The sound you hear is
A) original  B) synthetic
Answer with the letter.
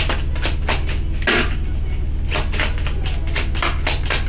A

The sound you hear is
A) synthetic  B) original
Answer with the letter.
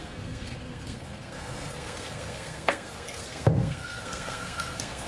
A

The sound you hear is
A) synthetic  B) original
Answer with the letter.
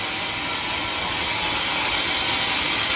B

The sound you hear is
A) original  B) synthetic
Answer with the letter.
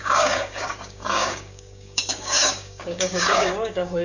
B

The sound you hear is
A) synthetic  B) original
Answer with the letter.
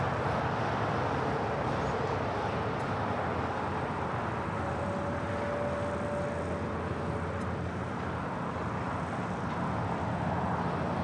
B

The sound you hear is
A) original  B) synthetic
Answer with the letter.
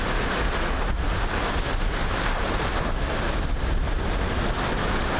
A